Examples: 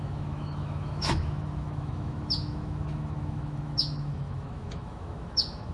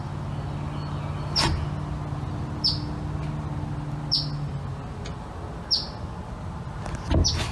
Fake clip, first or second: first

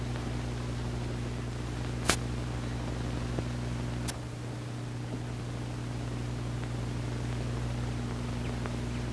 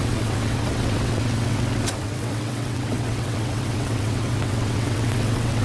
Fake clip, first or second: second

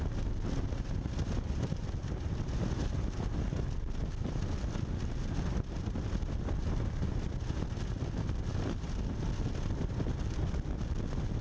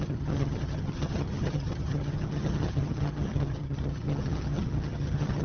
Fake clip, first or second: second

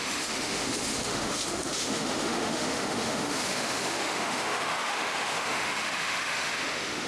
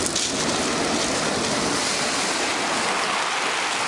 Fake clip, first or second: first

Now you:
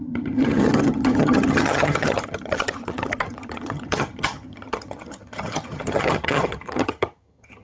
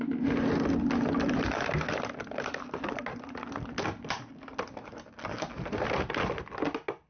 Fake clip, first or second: first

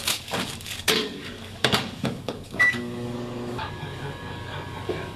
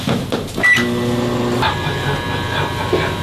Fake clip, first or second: first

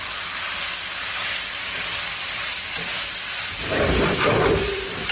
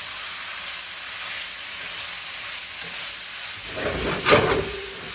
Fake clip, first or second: first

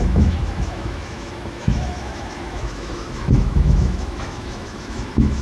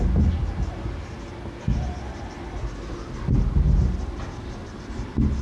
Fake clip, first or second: first